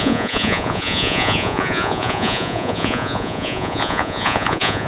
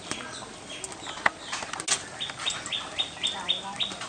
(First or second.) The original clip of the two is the second